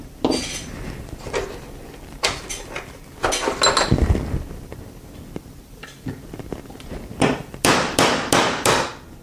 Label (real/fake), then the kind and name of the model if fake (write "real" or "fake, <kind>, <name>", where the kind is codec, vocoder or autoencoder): real